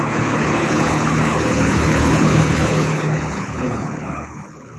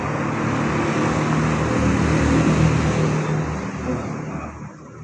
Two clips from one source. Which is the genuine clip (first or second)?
second